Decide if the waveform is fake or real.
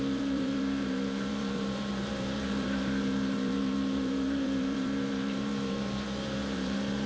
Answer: fake